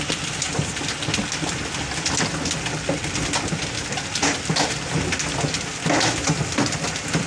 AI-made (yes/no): no